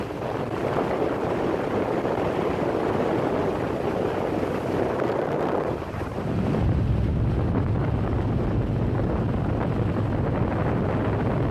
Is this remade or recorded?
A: recorded